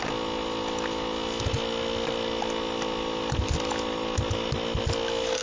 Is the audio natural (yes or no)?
yes